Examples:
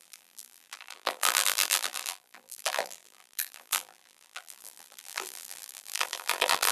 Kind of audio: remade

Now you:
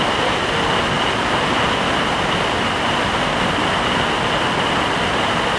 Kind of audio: recorded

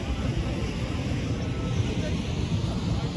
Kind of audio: recorded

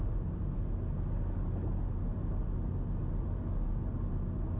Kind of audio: recorded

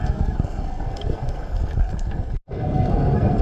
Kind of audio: remade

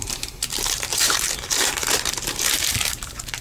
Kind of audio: remade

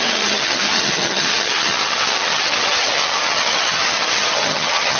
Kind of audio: remade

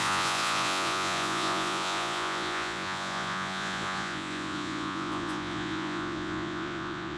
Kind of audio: remade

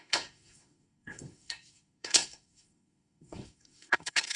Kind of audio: remade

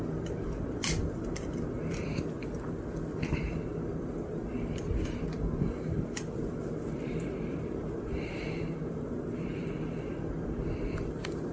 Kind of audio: remade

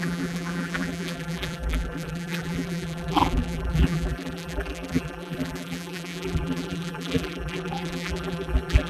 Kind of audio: remade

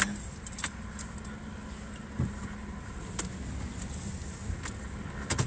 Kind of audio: recorded